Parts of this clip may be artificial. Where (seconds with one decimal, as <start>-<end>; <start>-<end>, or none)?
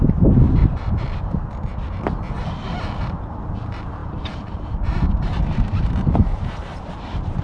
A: 0.0-0.6; 3.0-7.4